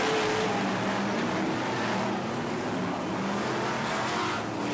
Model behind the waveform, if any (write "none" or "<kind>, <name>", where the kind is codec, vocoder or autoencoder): none